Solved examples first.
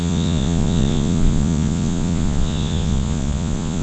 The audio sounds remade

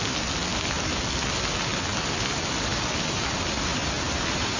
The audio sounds recorded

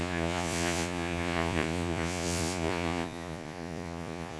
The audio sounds remade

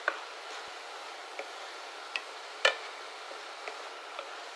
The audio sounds recorded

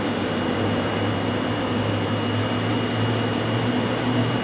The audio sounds recorded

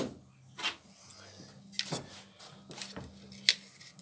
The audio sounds recorded